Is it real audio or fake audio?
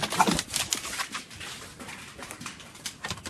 real